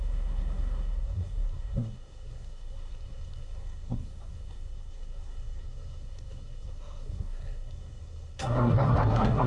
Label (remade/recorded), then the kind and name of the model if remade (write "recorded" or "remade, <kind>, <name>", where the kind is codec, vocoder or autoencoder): remade, codec, SNAC